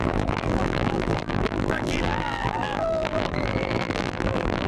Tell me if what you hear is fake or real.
fake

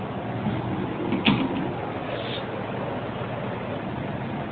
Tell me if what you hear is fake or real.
real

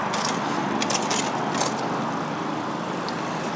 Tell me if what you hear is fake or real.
real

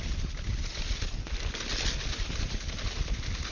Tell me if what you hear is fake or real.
real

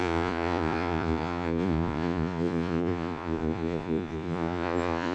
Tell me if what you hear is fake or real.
fake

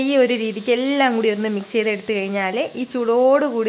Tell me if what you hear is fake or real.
fake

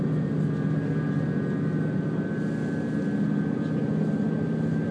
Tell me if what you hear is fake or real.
real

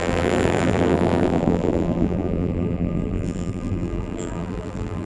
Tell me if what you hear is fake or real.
fake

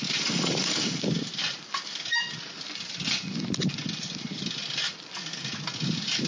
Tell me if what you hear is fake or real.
real